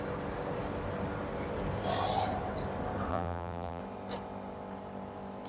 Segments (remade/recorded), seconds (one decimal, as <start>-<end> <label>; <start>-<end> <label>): 0.0-3.1 recorded; 3.1-3.8 remade; 3.8-5.5 recorded